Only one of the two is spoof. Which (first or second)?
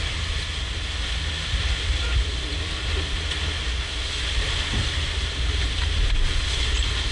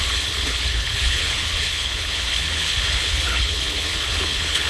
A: second